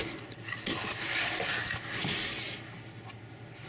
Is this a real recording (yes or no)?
yes